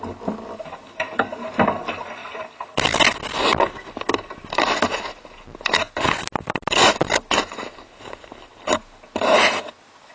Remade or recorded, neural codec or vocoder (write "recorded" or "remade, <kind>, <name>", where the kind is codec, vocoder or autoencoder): recorded